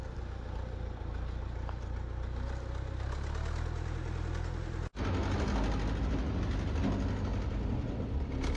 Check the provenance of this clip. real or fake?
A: real